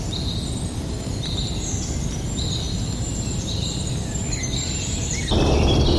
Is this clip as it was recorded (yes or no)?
no